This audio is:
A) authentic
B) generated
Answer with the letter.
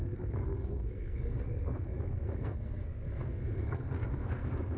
B